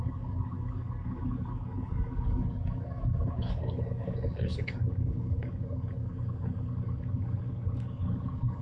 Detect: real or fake fake